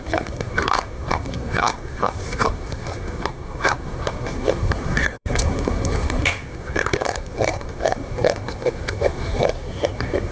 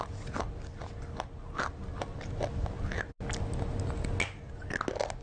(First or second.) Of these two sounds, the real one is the second